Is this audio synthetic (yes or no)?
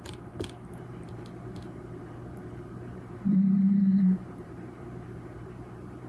yes